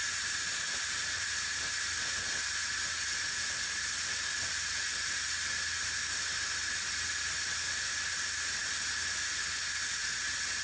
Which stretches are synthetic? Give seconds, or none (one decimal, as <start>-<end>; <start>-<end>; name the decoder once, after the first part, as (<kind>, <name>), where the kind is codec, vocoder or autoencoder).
none